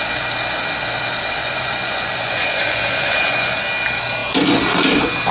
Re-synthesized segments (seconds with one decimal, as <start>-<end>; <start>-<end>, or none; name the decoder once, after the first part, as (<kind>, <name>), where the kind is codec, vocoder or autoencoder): 1.4-3.6 (vocoder, Vocos)